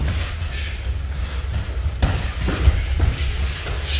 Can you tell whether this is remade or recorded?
recorded